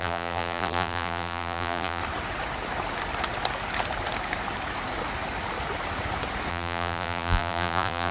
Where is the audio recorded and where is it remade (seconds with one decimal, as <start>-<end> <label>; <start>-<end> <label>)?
0.0-2.0 remade; 2.0-6.5 recorded; 6.5-8.1 remade